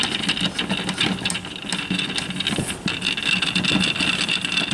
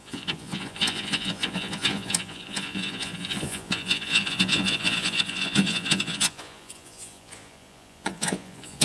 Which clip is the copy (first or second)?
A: second